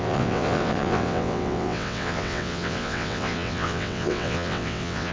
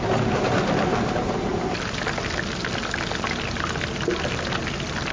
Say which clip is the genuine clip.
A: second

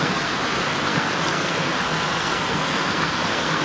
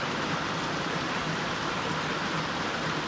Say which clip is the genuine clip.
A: second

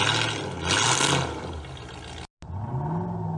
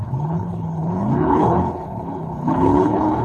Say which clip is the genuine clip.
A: first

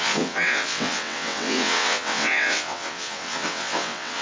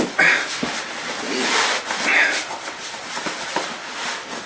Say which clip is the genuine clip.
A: second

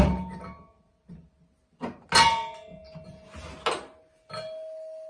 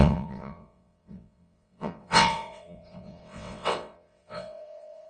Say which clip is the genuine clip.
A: first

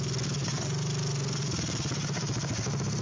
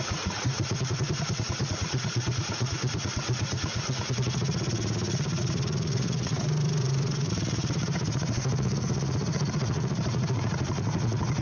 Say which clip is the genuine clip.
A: first